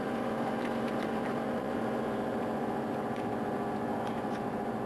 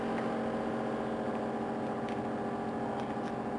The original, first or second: second